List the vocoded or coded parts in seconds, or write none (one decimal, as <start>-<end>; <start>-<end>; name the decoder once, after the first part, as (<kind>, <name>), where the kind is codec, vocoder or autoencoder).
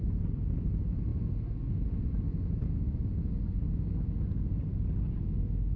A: none